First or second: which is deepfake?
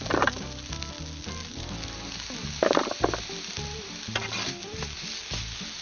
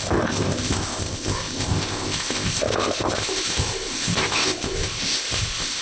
second